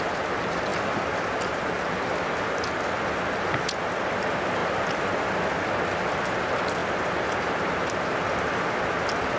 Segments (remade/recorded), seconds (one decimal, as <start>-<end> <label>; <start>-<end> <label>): 0.0-9.4 recorded